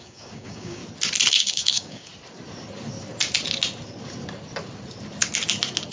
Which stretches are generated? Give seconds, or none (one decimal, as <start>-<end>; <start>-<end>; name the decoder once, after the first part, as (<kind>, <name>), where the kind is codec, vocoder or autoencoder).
0.0-0.8 (codec, DAC); 1.3-2.1